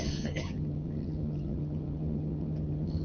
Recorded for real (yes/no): no